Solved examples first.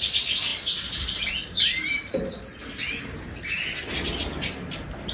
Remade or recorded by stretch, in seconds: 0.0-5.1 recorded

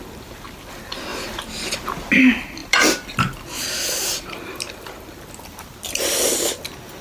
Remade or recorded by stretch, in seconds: 0.0-7.0 recorded